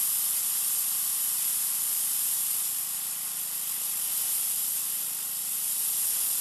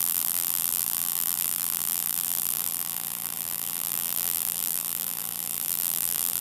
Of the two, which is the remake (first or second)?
second